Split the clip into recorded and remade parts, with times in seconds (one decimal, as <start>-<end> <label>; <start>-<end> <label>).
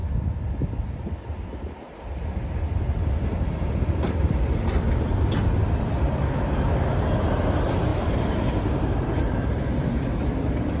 0.0-7.9 recorded; 7.9-9.8 remade; 9.8-10.8 recorded